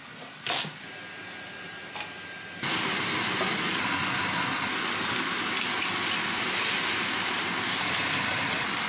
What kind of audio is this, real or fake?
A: real